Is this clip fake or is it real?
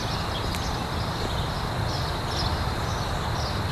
real